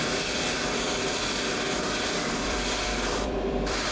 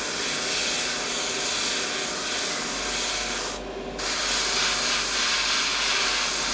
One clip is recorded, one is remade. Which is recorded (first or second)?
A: second